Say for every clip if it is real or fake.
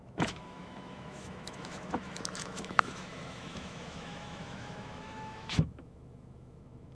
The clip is fake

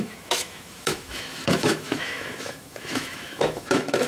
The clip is fake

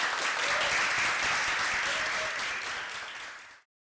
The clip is real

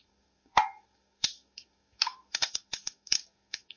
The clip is fake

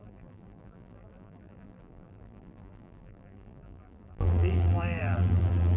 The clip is fake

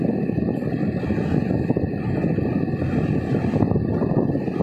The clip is real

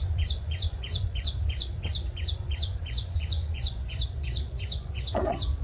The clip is fake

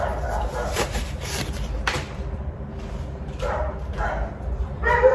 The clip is fake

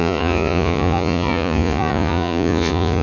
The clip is fake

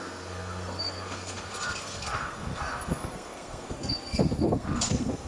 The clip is fake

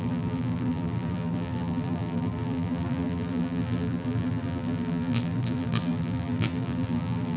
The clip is fake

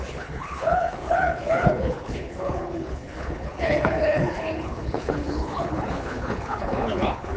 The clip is fake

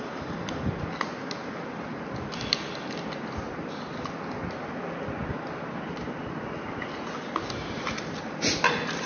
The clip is real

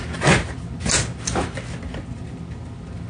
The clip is real